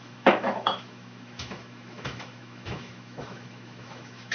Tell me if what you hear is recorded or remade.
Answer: remade